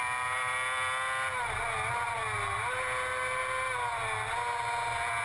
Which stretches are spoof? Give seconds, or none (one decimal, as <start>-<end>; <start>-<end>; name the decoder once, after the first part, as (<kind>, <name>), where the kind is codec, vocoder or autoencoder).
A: none